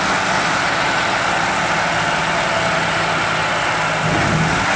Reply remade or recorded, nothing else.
recorded